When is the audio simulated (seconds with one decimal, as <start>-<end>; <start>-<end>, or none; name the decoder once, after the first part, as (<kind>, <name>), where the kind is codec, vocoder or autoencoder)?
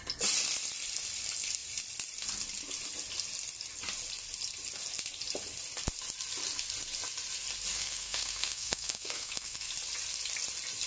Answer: 7.7-9.7 (codec, SNAC)